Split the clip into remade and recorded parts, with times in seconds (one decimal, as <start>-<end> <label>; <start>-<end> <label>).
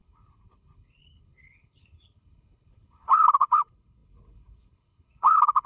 0.0-5.7 remade